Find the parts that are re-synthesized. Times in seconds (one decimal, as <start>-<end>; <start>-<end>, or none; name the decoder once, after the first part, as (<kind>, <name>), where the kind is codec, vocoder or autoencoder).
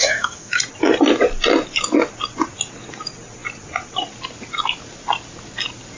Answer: 0.0-0.6 (autoencoder, DAC-VAE)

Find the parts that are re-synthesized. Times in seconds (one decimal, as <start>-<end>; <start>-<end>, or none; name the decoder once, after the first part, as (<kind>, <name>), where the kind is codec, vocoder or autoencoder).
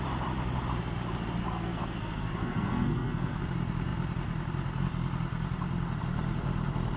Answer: 1.4-3.4 (codec, SNAC)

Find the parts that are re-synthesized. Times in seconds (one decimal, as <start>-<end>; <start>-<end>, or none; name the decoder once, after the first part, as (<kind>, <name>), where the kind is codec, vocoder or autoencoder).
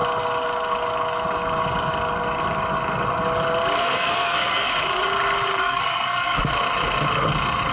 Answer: 3.8-4.7 (codec, SNAC); 5.6-6.4